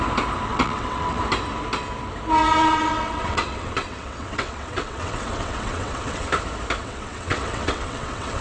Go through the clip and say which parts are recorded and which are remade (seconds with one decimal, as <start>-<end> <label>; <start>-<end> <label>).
0.0-0.5 recorded; 0.5-1.2 remade; 1.2-2.6 recorded; 2.6-6.3 remade; 6.3-6.8 recorded; 6.8-8.4 remade